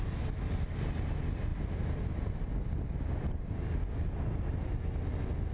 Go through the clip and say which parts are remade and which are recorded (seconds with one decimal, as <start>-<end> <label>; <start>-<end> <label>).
0.0-1.5 recorded; 1.5-2.3 remade; 2.3-5.5 recorded